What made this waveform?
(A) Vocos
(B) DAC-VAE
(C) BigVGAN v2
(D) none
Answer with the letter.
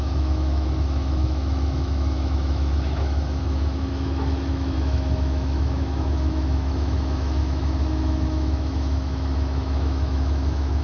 B